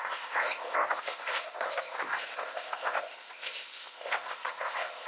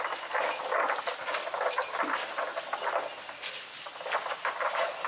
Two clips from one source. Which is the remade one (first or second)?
first